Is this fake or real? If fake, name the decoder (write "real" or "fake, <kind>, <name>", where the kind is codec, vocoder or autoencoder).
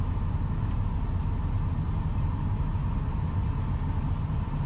real